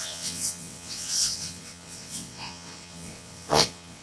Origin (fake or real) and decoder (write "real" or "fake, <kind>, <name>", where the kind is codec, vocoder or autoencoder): fake, vocoder, WaveNeXt